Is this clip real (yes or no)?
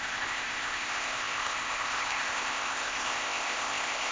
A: no